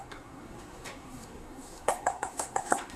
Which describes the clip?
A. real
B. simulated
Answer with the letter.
B